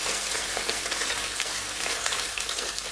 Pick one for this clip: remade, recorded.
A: remade